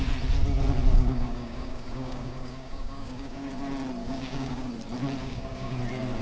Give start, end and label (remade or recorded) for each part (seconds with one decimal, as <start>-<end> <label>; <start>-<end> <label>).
0.0-0.9 recorded; 0.9-3.5 remade; 3.5-4.0 recorded; 4.0-4.7 remade; 4.7-5.2 recorded; 5.2-5.8 remade; 5.8-6.2 recorded